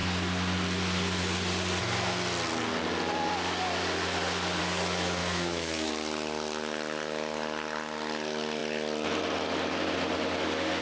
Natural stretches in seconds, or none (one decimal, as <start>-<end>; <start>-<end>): 0.0-5.2; 5.9-10.8

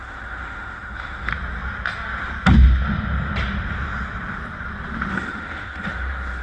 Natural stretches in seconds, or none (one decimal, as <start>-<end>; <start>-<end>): 1.3-5.1